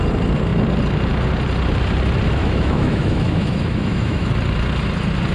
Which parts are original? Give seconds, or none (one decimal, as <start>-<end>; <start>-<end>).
0.0-2.4; 4.3-5.3